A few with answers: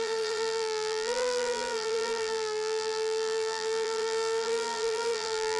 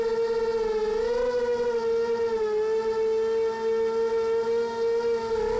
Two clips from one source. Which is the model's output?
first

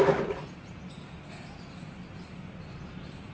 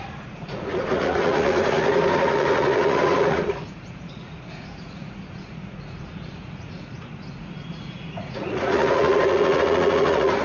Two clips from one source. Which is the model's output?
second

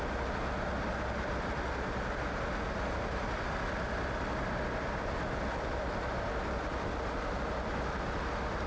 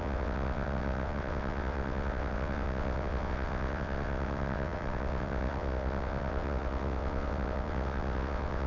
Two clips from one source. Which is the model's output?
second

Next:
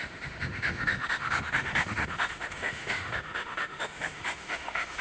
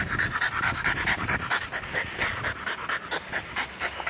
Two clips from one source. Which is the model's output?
first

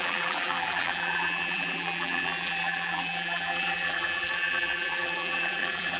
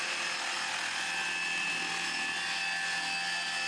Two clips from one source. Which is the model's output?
first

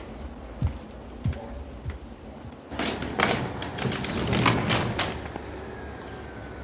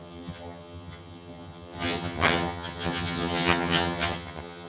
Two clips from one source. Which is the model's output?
second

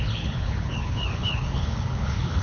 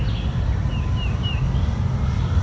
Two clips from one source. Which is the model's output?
first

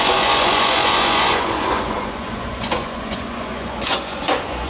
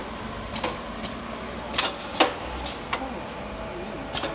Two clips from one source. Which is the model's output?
first